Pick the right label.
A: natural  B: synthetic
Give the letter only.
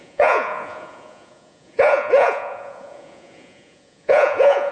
B